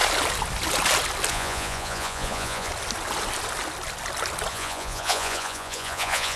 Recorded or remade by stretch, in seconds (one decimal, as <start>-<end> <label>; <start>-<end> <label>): 0.0-1.3 recorded; 1.3-2.7 remade; 2.7-4.5 recorded; 4.5-6.4 remade